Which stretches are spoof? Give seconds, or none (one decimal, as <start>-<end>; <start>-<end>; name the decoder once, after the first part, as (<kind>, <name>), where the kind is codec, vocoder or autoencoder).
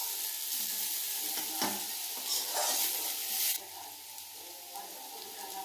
none